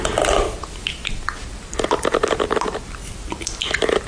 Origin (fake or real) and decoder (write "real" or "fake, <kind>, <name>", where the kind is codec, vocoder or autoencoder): real